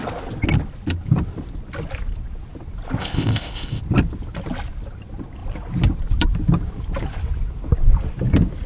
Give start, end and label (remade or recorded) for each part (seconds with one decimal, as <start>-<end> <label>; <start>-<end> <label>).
0.0-3.0 recorded; 3.0-3.8 remade; 3.8-8.7 recorded